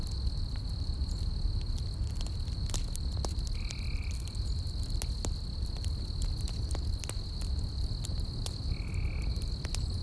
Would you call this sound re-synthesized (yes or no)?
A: no